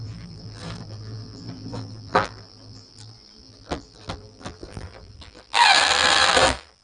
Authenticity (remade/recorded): remade